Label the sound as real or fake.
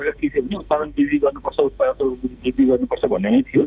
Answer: fake